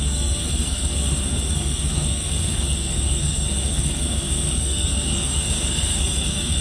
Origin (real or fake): fake